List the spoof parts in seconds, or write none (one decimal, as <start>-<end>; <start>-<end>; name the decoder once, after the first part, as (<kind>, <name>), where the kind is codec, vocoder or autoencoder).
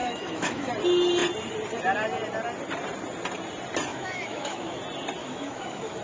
0.0-0.7 (autoencoder, DAC-VAE); 3.9-4.8; 5.2-6.0